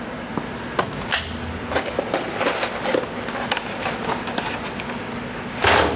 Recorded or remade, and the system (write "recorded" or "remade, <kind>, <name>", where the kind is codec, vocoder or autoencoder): recorded